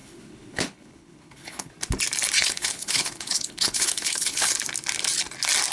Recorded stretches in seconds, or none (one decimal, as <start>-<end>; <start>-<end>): 1.7-2.4; 4.5-5.7